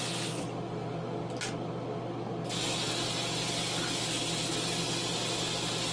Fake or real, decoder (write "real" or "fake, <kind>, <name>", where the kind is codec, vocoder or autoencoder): real